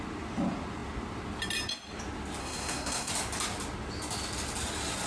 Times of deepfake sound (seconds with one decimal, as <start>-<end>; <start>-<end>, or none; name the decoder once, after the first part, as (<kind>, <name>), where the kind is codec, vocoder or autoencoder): 2.4-3.1 (codec, SNAC)